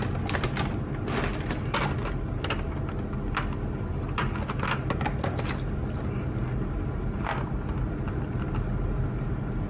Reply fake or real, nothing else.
real